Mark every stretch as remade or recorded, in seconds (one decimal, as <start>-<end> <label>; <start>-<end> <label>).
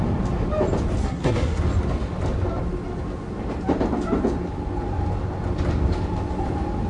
0.0-1.0 recorded; 1.0-1.6 remade; 1.6-6.9 recorded